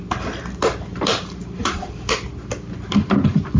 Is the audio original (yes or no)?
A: yes